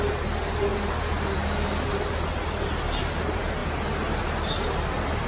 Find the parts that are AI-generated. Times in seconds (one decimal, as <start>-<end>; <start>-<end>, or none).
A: none